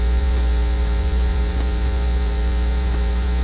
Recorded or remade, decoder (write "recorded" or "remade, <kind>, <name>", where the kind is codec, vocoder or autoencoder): remade, vocoder, Vocos